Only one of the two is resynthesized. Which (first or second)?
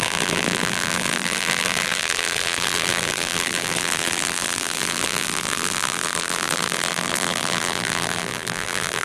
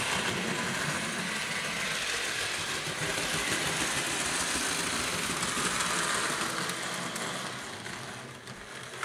first